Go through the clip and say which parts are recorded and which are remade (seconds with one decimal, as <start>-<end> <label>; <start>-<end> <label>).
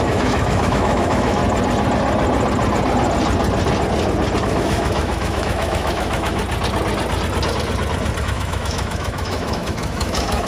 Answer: 0.0-1.4 remade; 1.4-4.4 recorded; 4.4-6.4 remade; 6.4-8.2 recorded; 8.2-10.5 remade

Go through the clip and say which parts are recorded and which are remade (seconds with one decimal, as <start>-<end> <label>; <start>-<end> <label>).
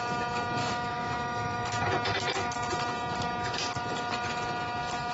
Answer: 0.0-0.6 recorded; 0.6-1.9 remade; 1.9-5.1 recorded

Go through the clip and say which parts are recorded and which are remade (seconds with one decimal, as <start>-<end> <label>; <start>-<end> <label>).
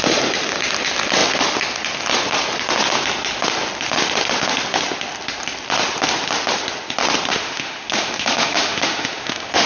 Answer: 0.0-7.3 recorded; 7.3-9.7 remade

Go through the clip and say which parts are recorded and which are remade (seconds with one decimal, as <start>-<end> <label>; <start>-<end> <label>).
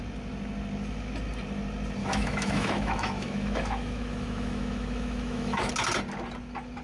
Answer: 0.0-2.0 recorded; 2.0-5.7 remade; 5.7-6.8 recorded